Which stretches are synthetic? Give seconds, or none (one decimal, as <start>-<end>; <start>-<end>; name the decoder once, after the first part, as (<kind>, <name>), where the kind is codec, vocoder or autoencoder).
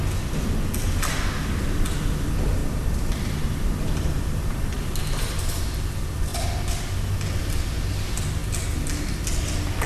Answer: 2.6-5.8 (vocoder, BigVGAN v2)